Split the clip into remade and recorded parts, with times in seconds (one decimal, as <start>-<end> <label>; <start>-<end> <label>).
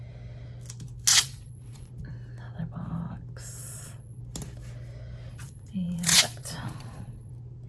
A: 0.0-1.1 recorded; 1.1-1.9 remade; 1.9-3.6 recorded; 3.6-4.2 remade; 4.2-5.3 recorded; 5.3-7.3 remade; 7.3-7.7 recorded